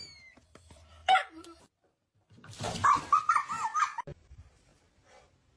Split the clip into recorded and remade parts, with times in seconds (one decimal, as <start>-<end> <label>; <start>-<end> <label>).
0.0-1.0 recorded; 1.0-3.0 remade; 3.0-5.6 recorded